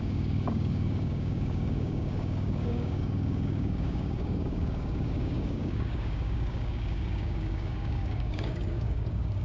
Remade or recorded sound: remade